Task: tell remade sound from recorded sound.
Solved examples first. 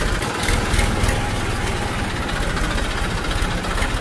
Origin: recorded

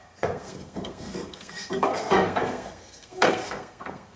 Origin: remade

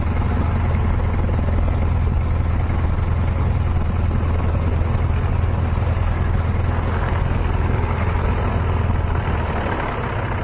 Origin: recorded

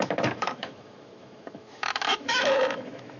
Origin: remade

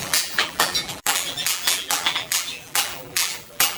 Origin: remade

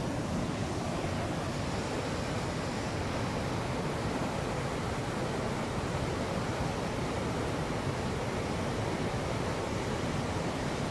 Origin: recorded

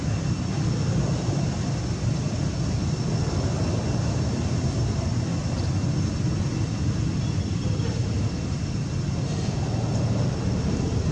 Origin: recorded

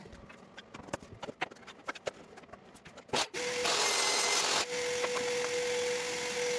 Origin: recorded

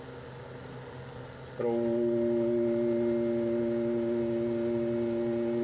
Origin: recorded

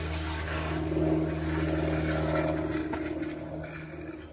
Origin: recorded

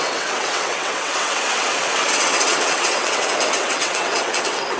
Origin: remade